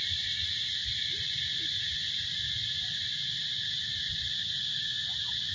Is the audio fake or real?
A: real